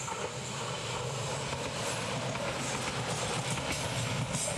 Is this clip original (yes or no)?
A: yes